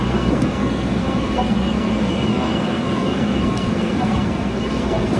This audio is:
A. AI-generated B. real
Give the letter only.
A